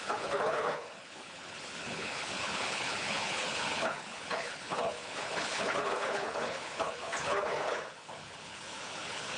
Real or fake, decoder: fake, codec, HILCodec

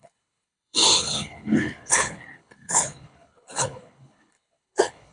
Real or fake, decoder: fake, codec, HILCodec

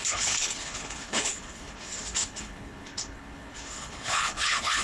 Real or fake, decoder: fake, codec, HILCodec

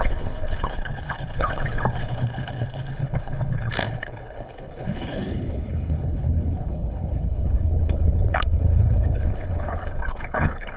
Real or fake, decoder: fake, codec, HILCodec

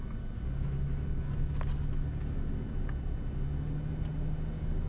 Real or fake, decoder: real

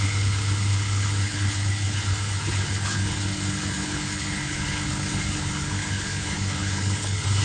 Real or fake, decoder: fake, codec, HILCodec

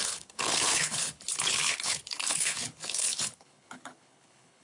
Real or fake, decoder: fake, codec, HILCodec